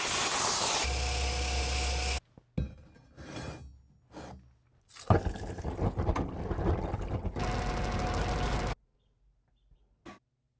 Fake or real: real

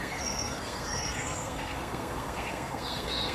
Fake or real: fake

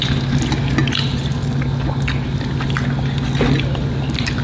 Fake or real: real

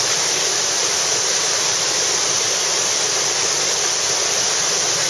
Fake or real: real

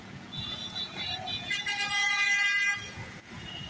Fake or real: fake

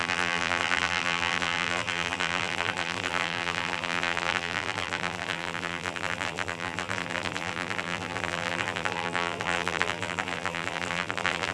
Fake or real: fake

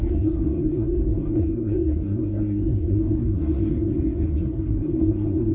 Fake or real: fake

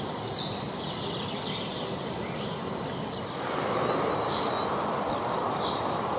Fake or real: real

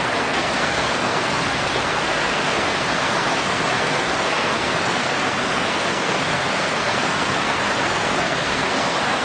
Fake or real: fake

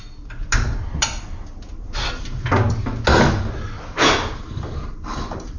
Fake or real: real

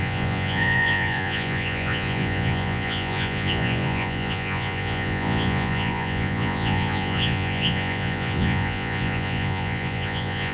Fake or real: fake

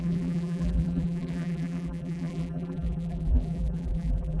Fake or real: fake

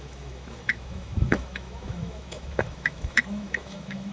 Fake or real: fake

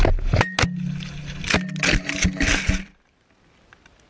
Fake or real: real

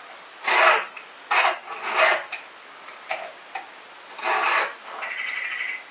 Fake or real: real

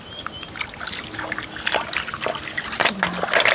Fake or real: real